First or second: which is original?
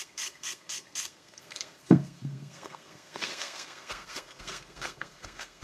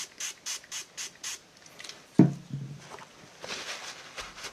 second